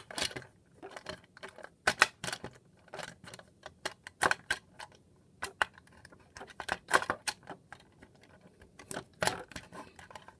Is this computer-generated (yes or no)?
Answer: no